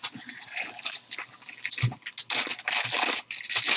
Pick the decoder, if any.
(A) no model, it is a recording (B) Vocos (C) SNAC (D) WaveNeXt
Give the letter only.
A